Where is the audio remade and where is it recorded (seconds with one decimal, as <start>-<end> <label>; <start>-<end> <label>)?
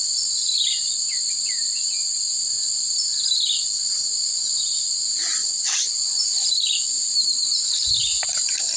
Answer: 0.0-8.8 recorded